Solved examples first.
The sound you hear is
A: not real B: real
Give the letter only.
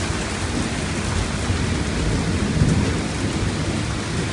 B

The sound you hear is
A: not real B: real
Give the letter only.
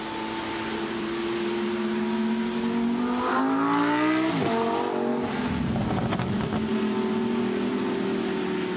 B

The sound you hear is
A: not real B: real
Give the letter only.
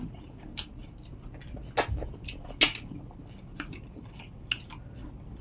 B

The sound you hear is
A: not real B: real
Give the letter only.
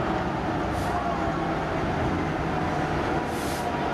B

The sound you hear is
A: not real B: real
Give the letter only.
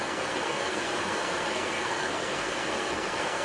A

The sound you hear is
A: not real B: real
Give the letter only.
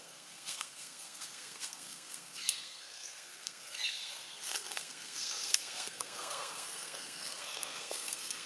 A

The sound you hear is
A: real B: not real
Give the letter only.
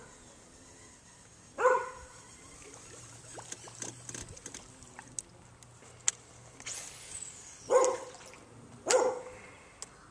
A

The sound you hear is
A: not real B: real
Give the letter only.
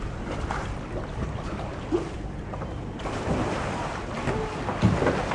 B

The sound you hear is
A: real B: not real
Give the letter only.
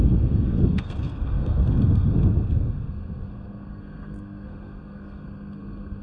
B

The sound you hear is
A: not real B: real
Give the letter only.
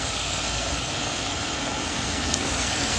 A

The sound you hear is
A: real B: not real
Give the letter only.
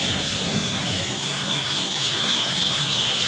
B